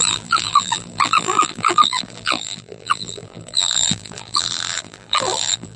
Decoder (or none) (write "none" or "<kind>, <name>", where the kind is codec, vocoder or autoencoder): vocoder, BigVGAN v2